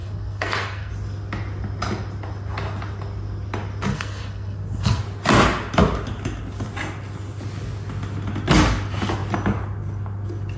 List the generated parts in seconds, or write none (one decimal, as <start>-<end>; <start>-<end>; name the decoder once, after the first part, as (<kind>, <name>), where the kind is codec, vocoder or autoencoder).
0.0-0.9 (codec, SNAC); 3.9-5.0